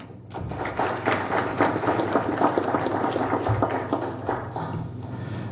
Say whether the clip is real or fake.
real